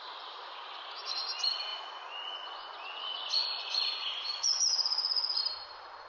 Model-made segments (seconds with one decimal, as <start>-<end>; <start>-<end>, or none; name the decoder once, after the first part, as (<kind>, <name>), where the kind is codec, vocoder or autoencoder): 1.7-5.4 (vocoder, Vocos)